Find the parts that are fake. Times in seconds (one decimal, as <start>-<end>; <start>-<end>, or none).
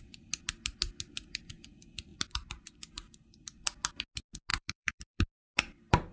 2.1-2.7; 4.5-5.4